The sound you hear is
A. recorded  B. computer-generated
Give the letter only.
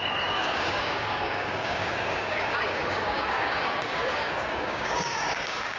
B